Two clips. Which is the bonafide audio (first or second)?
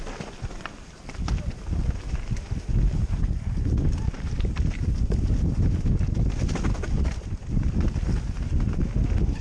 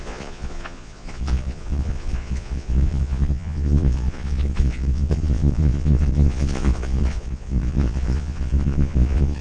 first